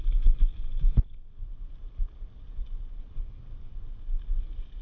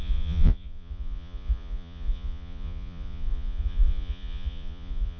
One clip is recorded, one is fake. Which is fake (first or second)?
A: second